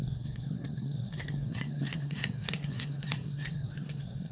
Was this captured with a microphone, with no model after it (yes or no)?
no